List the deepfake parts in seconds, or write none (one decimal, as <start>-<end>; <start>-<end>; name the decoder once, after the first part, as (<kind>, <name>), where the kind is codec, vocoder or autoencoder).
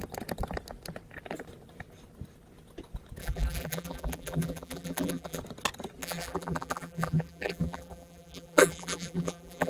3.2-5.4 (vocoder, BigVGAN v2); 6.0-9.7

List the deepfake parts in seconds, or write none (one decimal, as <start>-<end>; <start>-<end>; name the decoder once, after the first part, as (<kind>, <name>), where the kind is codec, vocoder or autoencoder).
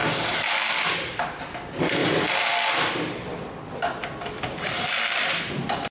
2.0-5.5 (vocoder, BigVGAN v2)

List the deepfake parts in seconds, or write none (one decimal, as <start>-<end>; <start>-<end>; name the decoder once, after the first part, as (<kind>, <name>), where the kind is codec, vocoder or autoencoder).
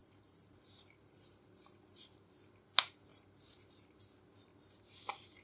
0.0-2.4 (vocoder, BigVGAN v2); 3.1-4.0; 4.5-5.4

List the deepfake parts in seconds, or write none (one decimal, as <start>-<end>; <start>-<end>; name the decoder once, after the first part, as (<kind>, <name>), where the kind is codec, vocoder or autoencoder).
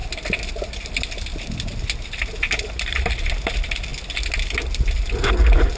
none